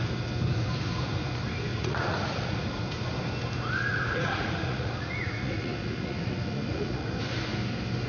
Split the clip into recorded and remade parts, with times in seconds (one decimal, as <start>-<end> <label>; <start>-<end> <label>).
0.0-1.7 recorded; 1.7-2.8 remade; 2.8-3.9 recorded; 3.9-7.1 remade; 7.1-8.1 recorded